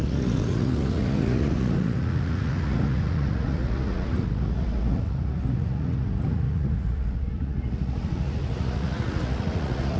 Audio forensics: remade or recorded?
remade